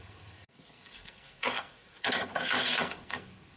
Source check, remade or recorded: remade